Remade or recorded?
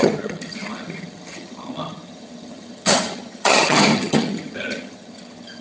remade